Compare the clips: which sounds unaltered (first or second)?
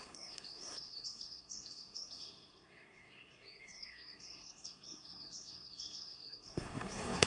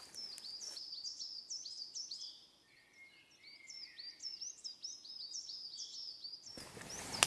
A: second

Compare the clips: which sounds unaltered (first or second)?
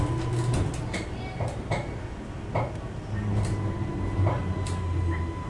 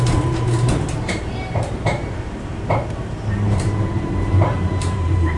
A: first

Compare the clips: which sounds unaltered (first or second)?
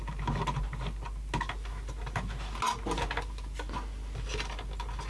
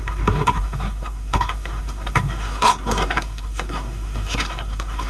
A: first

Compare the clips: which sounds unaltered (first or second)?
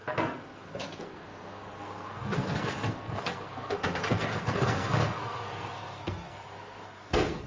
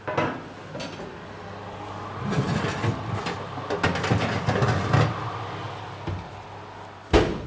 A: second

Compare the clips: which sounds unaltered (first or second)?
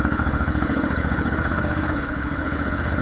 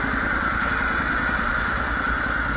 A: second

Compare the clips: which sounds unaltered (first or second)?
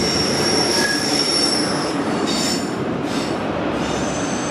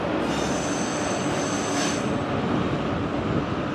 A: second